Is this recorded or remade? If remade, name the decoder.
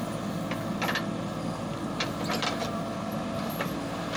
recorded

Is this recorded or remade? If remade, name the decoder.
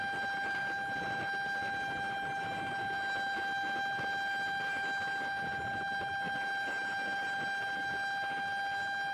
recorded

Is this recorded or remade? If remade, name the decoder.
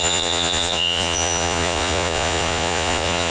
remade, vocoder, Vocos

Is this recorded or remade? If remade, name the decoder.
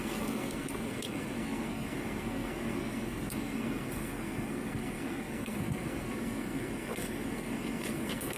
remade, codec, SNAC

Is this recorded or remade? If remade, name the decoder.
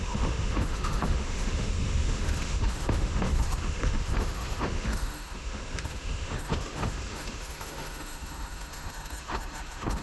remade, autoencoder, DAC-VAE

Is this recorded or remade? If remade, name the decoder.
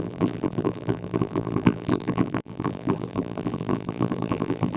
remade, vocoder, BigVGAN v2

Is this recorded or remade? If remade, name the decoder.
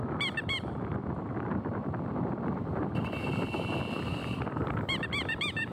remade, vocoder, BigVGAN v2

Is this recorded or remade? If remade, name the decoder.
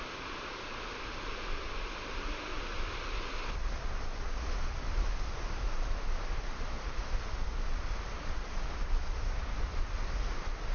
recorded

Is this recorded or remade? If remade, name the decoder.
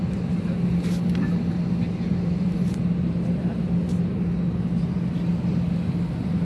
recorded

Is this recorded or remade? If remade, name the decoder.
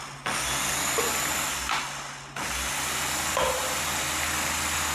recorded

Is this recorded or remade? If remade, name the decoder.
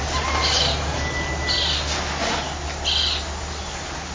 recorded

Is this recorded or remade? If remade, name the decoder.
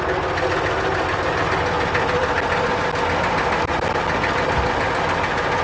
recorded